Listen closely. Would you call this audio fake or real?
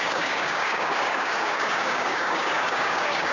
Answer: fake